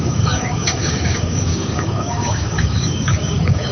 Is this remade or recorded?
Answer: remade